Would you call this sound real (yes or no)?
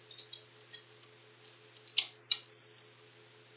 yes